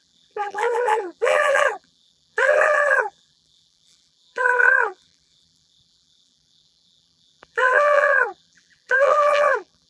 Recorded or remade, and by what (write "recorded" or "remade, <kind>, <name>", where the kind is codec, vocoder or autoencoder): remade, vocoder, BigVGAN v2